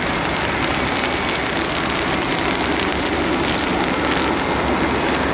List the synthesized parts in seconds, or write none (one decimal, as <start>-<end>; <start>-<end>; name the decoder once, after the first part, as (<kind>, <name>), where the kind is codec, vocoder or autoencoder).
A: none